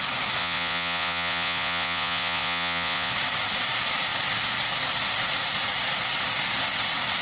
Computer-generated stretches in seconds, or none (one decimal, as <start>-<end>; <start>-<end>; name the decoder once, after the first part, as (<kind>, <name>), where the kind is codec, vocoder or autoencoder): 0.4-3.1 (vocoder, Vocos)